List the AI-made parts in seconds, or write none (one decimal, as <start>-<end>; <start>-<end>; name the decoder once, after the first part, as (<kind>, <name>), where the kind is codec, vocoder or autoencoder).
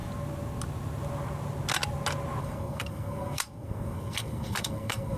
2.4-5.2 (codec, SNAC)